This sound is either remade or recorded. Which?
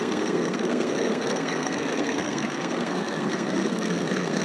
remade